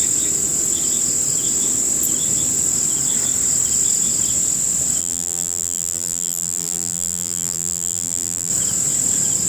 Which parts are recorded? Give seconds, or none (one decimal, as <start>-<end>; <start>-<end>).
0.0-5.0; 8.5-9.5